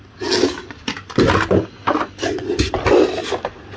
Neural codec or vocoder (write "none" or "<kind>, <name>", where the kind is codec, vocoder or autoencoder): none